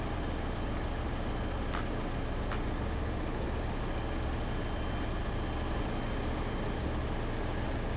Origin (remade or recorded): recorded